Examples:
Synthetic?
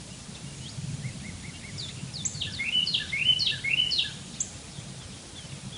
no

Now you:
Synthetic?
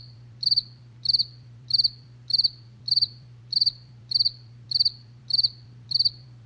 yes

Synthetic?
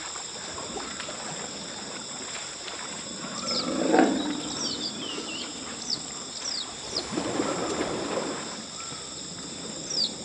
no